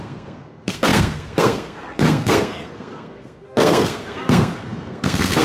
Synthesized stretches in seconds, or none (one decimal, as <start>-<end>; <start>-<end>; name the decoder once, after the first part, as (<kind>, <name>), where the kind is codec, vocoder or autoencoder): 0.0-5.4 (codec, SNAC)